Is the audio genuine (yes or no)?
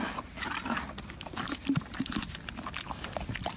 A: yes